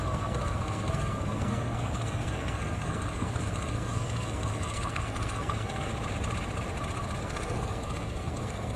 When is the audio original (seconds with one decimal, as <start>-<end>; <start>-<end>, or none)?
5.9-7.2

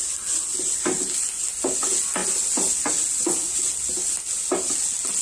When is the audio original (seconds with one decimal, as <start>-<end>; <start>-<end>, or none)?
0.0-5.2

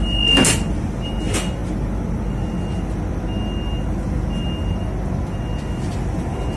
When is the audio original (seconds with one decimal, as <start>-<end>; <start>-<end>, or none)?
0.0-6.6

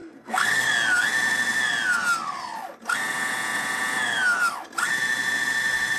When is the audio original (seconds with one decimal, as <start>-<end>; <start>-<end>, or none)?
0.7-6.0

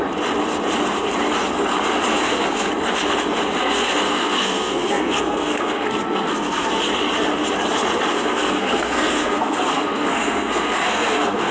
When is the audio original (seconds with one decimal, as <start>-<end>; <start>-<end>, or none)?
0.0-2.1; 2.7-3.6; 6.7-8.1

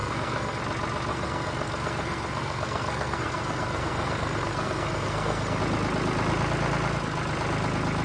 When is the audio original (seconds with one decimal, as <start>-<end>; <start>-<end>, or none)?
0.6-1.1; 5.6-8.0

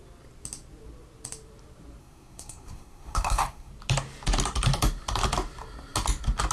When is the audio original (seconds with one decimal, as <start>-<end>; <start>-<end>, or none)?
0.0-2.0; 3.7-6.5

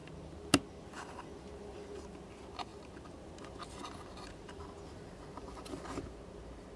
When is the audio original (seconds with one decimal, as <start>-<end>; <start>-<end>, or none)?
0.0-6.8